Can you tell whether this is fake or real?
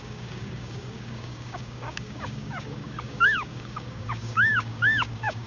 fake